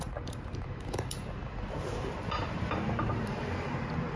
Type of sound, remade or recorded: remade